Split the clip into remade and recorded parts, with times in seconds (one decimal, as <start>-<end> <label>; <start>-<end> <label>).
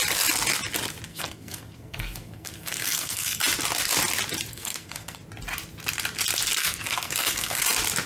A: 0.0-1.1 recorded; 1.1-3.4 remade; 3.4-4.5 recorded; 4.5-5.2 remade; 5.2-6.6 recorded; 6.6-7.6 remade; 7.6-8.1 recorded